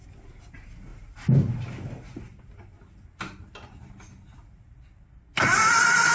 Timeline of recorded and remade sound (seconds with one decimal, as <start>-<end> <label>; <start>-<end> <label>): 0.0-6.1 recorded